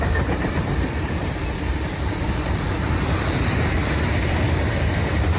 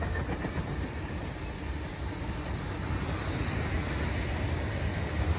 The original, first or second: second